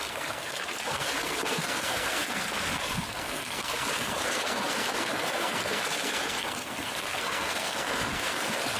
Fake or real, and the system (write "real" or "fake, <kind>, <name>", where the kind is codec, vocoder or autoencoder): fake, codec, SNAC